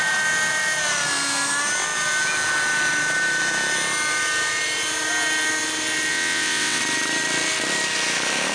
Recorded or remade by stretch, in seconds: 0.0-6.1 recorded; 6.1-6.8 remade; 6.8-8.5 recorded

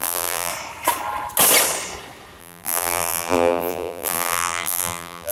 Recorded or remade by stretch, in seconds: 0.0-0.5 remade; 0.5-2.4 recorded; 2.4-5.3 remade

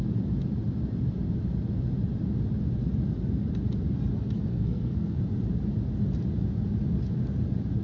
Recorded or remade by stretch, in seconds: 0.0-4.5 recorded; 4.5-5.2 remade; 5.2-7.8 recorded

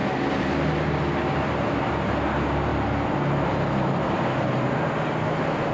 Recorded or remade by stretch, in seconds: 0.0-5.7 recorded

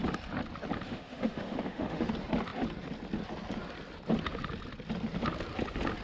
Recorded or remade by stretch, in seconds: 0.0-0.9 recorded; 0.9-2.1 remade; 2.1-6.0 recorded

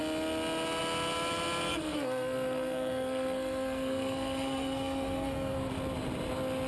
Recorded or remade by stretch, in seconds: 0.0-1.7 recorded; 1.7-5.7 remade; 5.7-6.7 recorded

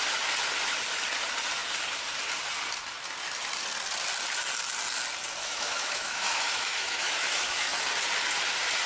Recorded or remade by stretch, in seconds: 0.0-5.4 recorded; 5.4-7.8 remade; 7.8-8.9 recorded